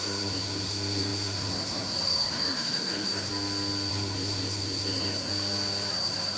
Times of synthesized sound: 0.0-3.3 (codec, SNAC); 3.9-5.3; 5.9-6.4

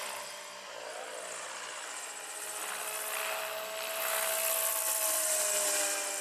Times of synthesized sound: 4.7-6.2 (vocoder, BigVGAN v2)

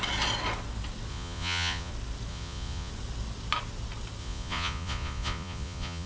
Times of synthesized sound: 1.1-1.9 (vocoder, Vocos); 2.3-2.9; 4.2-6.1

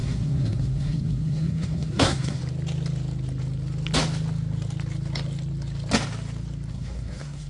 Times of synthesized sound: 0.0-2.4 (codec, SNAC); 6.7-7.5

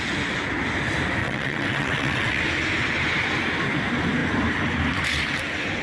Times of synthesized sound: 1.2-2.4 (vocoder, WaveNeXt)

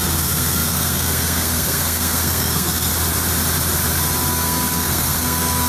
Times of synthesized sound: 0.0-2.9 (codec, SNAC); 4.3-5.7

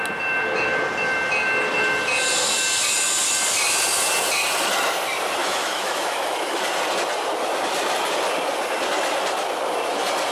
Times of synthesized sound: 5.4-6.6 (autoencoder, DAC-VAE)